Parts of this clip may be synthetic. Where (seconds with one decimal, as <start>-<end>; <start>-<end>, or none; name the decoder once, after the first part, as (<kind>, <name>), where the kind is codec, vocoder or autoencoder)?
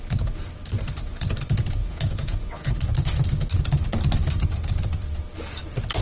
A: 1.8-2.7 (vocoder, Vocos)